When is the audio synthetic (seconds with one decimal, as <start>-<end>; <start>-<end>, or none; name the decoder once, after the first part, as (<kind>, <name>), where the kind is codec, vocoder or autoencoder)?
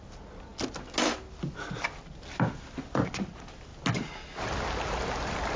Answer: none